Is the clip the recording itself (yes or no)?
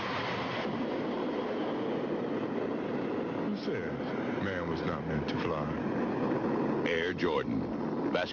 yes